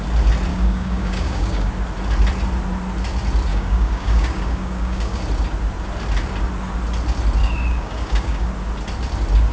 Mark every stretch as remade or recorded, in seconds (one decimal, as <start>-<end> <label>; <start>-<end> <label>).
0.0-0.5 recorded; 0.5-1.7 remade; 1.7-3.5 recorded; 3.5-5.2 remade; 5.2-7.4 recorded; 7.4-8.5 remade; 8.5-9.5 recorded